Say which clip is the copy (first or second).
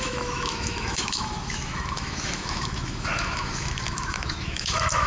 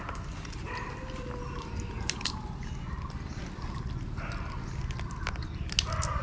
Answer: first